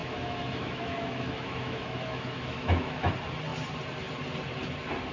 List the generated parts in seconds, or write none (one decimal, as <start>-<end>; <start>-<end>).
0.0-3.1